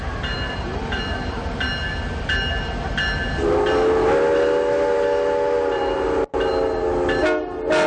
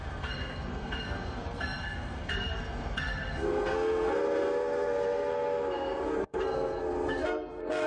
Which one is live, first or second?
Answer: first